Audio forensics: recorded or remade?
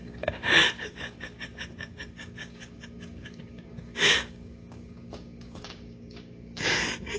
remade